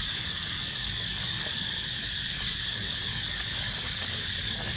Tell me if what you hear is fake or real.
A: fake